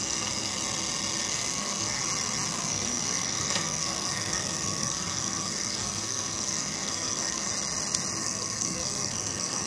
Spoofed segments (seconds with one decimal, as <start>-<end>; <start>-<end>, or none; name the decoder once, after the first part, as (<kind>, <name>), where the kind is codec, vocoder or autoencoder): 0.0-0.5 (codec, SNAC); 1.3-2.0; 2.5-7.5; 8.2-9.7